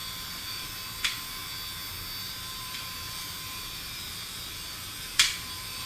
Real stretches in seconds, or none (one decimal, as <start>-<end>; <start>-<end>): 0.7-2.2